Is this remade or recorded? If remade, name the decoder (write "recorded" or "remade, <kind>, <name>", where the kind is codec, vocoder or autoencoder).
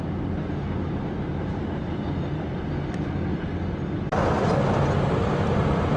recorded